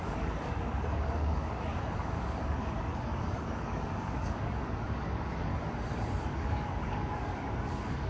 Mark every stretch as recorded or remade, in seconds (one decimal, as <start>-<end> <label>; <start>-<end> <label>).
0.0-5.5 remade; 5.5-6.2 recorded; 6.2-8.1 remade